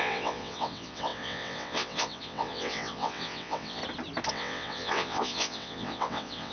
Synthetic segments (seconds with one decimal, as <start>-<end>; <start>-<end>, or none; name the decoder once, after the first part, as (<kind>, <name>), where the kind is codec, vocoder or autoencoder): 0.0-3.8 (vocoder, WaveNeXt); 4.3-6.5